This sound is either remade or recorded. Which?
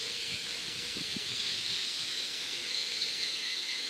remade